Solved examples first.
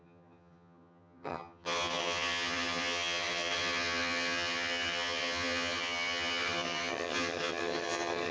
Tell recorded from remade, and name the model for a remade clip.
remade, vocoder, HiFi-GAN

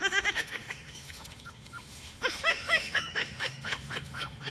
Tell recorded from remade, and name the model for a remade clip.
remade, autoencoder, DAC-VAE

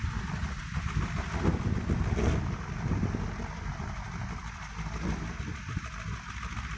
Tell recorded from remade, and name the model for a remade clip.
recorded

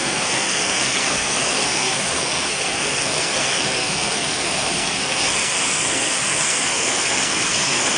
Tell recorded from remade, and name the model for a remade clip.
remade, codec, SNAC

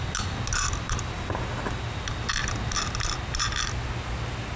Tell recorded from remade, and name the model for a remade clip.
recorded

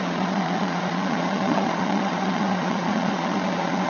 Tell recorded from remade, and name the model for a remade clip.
remade, vocoder, Vocos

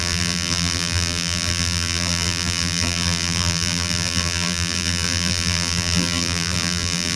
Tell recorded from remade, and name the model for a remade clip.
remade, vocoder, BigVGAN v2